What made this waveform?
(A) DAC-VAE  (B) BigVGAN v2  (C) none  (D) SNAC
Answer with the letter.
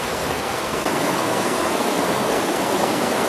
D